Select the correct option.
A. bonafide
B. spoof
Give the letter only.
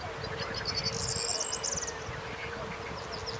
A